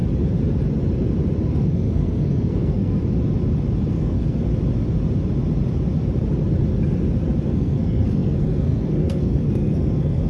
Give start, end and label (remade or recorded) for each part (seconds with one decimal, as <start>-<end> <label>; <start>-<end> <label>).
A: 0.0-1.5 recorded; 1.5-3.0 remade; 3.0-3.9 recorded; 3.9-4.5 remade; 4.5-7.5 recorded; 7.5-10.3 remade